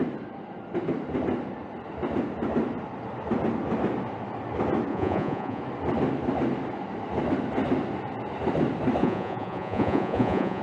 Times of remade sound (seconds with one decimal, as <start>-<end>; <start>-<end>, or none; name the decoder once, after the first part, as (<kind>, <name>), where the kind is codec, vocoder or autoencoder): 4.9-5.6 (vocoder, Vocos); 9.0-10.6